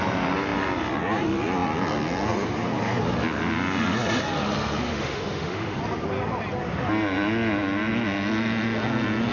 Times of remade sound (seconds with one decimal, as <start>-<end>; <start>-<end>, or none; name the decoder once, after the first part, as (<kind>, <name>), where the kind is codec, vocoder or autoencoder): 4.9-5.8 (autoencoder, DAC-VAE)